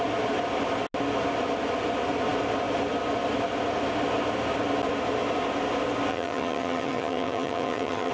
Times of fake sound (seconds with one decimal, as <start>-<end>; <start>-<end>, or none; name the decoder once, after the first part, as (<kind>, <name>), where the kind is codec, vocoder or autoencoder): 6.1-8.1 (vocoder, HiFi-GAN)